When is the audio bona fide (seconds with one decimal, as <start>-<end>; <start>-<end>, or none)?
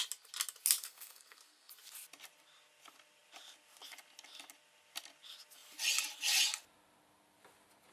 0.0-0.8; 1.7-7.9